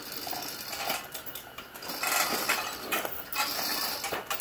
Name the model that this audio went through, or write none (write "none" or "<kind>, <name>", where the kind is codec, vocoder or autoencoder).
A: none